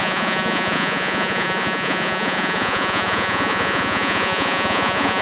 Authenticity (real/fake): fake